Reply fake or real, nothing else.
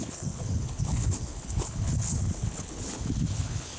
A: fake